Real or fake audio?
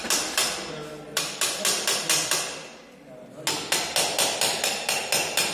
real